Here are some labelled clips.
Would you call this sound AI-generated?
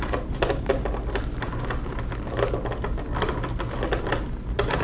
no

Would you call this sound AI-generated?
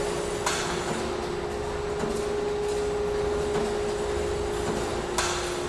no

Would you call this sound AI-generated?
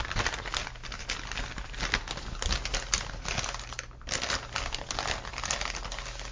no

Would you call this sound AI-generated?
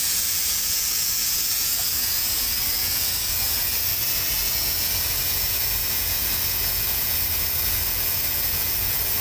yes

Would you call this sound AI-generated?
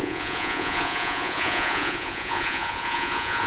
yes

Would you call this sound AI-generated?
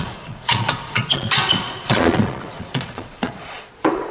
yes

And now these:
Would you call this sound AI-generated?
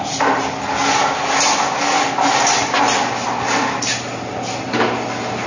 no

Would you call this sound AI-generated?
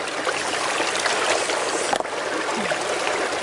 no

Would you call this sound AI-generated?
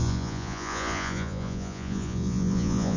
yes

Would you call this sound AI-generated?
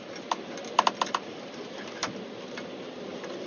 no